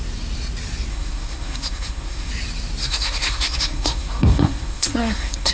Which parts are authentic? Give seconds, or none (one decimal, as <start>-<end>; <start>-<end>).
0.0-0.9; 2.3-2.8